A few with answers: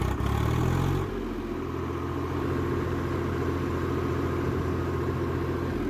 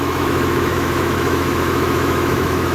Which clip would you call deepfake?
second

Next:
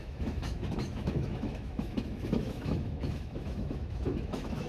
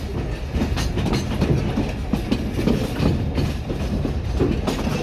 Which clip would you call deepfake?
first